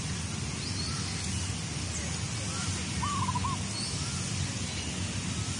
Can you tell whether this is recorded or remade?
recorded